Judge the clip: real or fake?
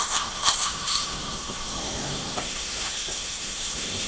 fake